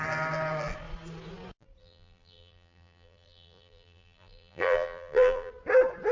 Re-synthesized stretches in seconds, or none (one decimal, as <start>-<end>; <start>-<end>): 1.8-5.5